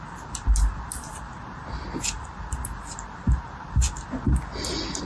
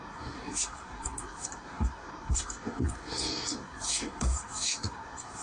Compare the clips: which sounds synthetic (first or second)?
second